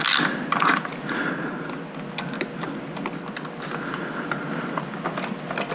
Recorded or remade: recorded